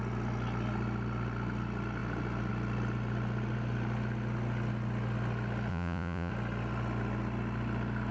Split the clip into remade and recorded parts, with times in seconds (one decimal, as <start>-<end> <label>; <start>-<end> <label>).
0.0-5.7 recorded; 5.7-6.3 remade; 6.3-8.1 recorded